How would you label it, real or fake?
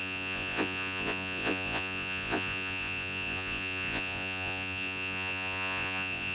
fake